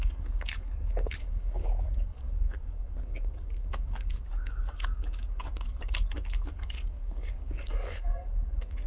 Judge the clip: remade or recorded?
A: remade